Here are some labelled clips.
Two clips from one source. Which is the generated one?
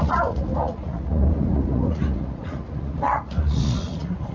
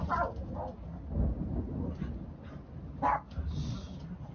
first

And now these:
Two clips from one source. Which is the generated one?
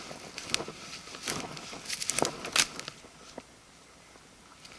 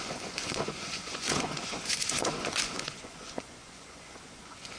second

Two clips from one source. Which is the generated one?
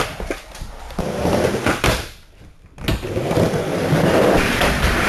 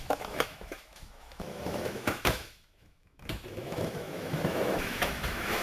second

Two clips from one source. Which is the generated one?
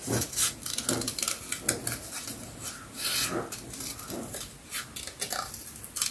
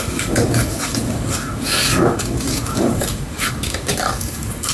second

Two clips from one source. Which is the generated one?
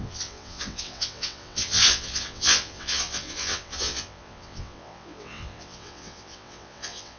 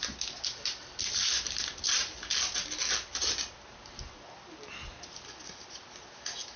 first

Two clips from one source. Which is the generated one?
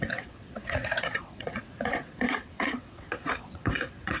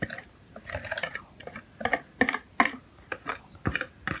first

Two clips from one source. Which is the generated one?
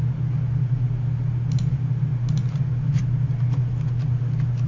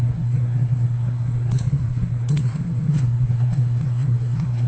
second